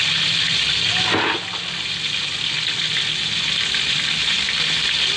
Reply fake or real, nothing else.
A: real